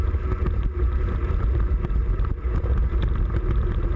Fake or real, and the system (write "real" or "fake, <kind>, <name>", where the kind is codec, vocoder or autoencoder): fake, vocoder, BigVGAN v2